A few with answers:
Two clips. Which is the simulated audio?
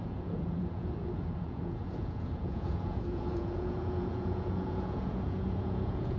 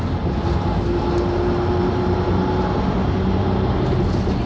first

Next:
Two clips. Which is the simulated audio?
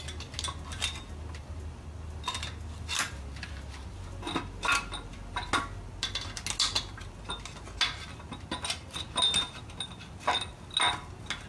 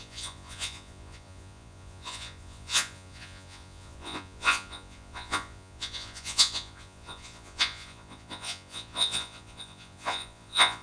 second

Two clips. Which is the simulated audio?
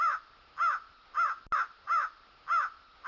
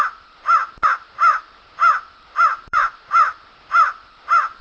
second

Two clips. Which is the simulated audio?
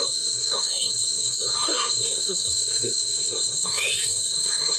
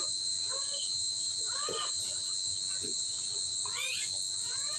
first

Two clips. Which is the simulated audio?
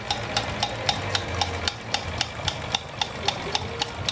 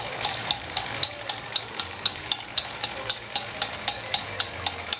second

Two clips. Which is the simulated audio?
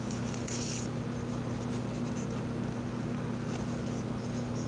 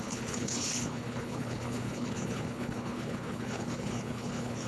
second